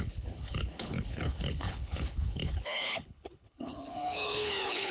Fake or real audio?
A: fake